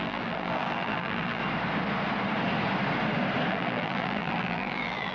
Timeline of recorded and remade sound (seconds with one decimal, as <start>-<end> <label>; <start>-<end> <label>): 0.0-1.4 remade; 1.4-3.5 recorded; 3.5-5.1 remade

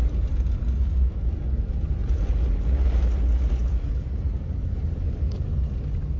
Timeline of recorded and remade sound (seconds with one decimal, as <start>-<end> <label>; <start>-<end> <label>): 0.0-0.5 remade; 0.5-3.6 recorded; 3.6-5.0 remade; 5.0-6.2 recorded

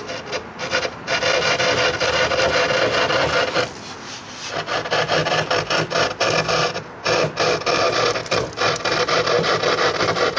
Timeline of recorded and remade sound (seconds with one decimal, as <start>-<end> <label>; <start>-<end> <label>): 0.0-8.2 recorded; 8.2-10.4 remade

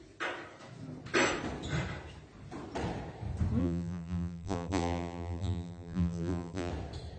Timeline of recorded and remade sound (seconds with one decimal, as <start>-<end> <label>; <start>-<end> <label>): 0.0-3.6 recorded; 3.6-6.7 remade; 6.7-7.2 recorded

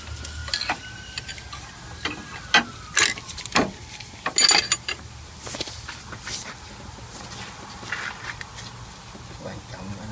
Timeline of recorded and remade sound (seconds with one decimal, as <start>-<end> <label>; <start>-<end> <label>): 0.0-10.1 recorded